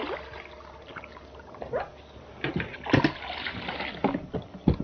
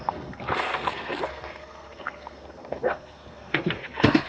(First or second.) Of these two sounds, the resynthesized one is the second